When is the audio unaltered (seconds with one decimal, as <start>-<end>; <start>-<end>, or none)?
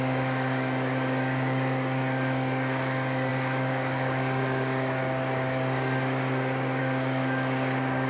none